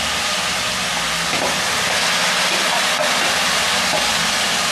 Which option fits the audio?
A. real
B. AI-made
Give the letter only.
A